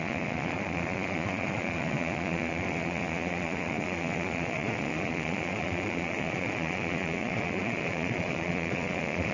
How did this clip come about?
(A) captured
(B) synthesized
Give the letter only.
B